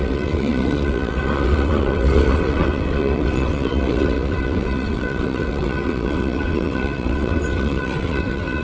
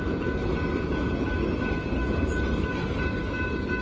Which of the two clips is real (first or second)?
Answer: second